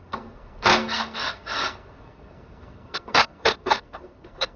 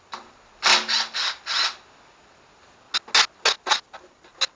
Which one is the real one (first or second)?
second